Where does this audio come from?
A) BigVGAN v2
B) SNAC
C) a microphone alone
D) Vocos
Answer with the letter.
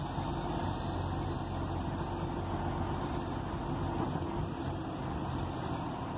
C